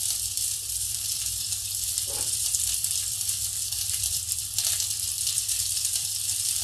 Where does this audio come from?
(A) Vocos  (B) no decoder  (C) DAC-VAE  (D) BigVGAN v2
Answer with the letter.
D